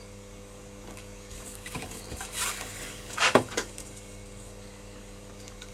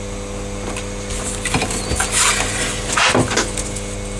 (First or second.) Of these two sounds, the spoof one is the first